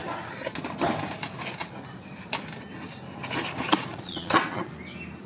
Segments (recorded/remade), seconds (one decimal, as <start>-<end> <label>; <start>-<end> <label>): 0.0-3.9 recorded; 3.9-4.7 remade; 4.7-5.3 recorded